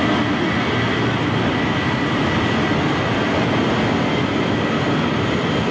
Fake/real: real